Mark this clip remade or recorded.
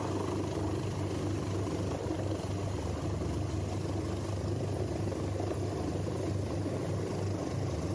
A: recorded